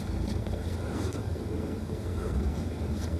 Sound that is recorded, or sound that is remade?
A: remade